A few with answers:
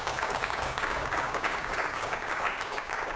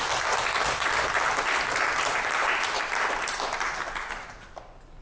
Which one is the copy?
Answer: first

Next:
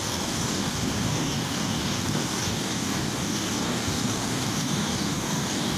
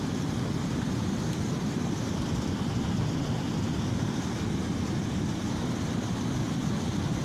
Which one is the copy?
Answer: first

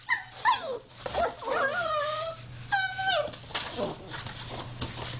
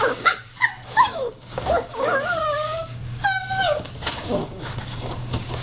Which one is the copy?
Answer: second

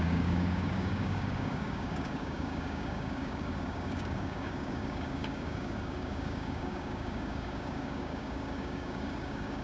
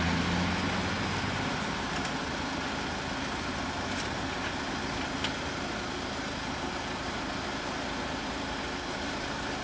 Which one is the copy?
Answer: first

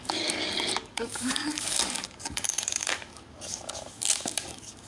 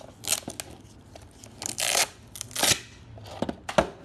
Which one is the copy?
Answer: first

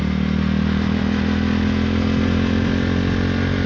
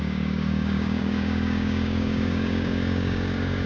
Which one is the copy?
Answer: second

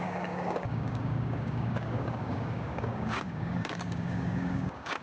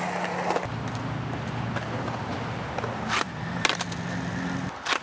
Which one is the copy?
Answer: first